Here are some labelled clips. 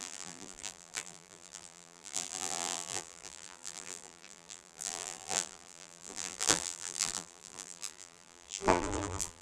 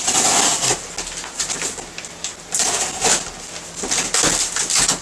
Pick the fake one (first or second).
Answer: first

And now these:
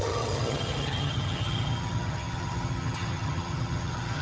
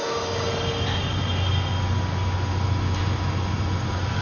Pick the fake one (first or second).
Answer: first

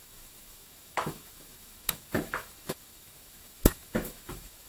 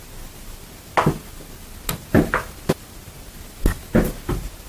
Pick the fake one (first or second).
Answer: first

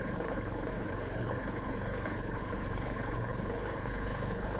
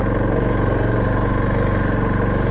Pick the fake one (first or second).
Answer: first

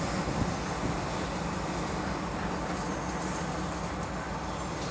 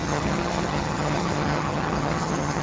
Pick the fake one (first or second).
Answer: second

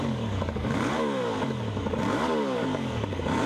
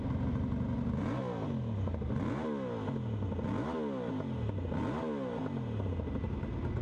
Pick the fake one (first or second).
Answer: first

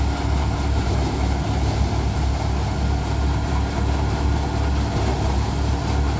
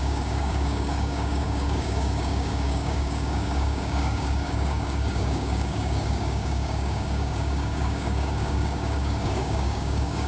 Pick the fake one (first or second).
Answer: second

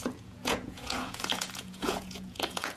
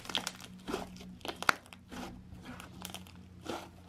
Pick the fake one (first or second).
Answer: first